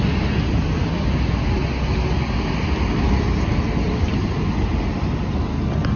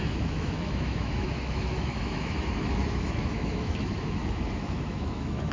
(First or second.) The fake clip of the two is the second